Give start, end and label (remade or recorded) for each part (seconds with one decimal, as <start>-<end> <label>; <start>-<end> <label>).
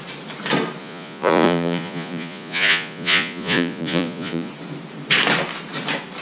0.0-0.8 recorded; 0.8-4.5 remade; 4.5-6.2 recorded